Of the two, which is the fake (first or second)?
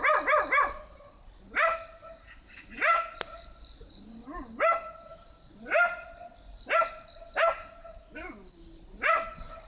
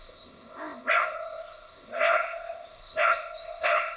second